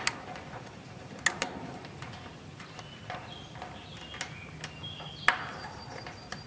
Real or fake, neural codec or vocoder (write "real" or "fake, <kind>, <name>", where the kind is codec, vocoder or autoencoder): real